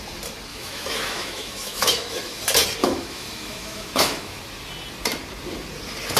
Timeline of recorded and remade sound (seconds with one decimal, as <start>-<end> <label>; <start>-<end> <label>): 0.0-0.5 recorded; 0.5-2.4 remade; 2.4-2.8 recorded; 2.8-4.4 remade; 4.4-6.2 recorded

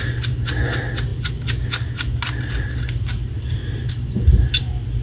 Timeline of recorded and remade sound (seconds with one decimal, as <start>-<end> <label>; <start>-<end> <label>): 0.0-5.0 recorded

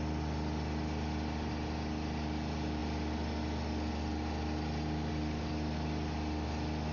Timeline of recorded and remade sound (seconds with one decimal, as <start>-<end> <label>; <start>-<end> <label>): 0.0-6.9 recorded

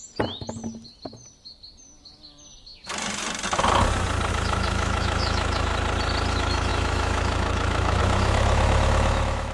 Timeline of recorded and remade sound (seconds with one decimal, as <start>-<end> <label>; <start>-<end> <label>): 0.0-4.3 recorded; 4.3-5.7 remade; 5.7-6.3 recorded; 6.3-9.5 remade

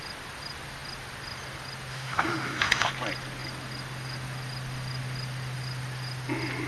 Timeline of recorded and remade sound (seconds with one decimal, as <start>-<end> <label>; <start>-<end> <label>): 0.0-1.9 recorded; 1.9-2.9 remade; 2.9-6.7 recorded

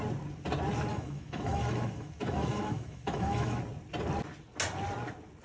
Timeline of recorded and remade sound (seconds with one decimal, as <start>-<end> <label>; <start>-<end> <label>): 0.0-0.9 recorded; 0.9-3.6 remade; 3.6-5.4 recorded

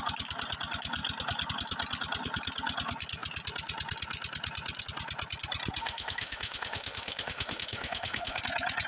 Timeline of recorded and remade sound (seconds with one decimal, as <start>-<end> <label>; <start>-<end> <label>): 0.0-5.8 recorded; 5.8-8.4 remade; 8.4-8.9 recorded